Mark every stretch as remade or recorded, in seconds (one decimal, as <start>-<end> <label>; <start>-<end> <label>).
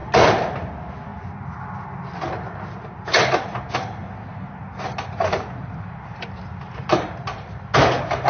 0.0-8.3 recorded